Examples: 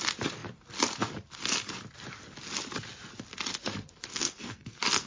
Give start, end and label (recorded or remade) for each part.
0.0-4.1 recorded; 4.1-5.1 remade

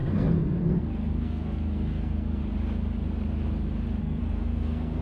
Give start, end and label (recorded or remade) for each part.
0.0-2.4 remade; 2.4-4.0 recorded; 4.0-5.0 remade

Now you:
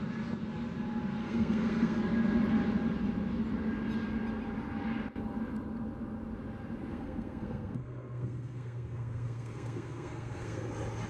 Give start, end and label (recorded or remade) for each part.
0.0-1.2 recorded; 1.2-2.0 remade; 2.0-6.9 recorded; 6.9-10.7 remade; 10.7-11.1 recorded

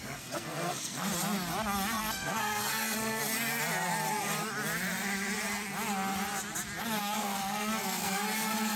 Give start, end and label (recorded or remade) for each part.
0.0-1.1 remade; 1.1-2.0 recorded; 2.0-3.2 remade; 3.2-6.8 recorded; 6.8-8.8 remade

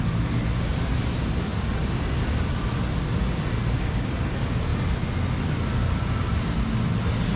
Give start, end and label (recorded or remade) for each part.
0.0-7.4 recorded